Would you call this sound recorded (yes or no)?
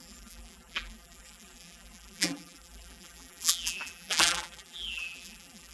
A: no